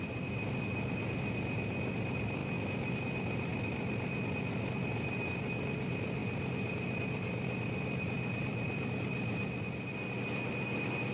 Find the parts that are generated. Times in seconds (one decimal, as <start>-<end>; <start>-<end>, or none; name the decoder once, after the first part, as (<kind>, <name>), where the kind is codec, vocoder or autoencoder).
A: 2.4-3.0 (vocoder, BigVGAN v2)